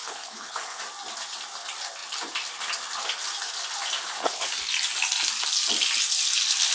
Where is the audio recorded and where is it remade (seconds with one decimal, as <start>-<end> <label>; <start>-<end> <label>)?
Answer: 0.0-0.8 remade; 0.8-6.7 recorded